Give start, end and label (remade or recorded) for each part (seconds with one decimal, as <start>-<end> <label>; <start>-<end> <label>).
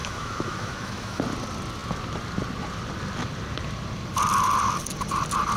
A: 0.0-1.2 remade; 1.2-5.6 recorded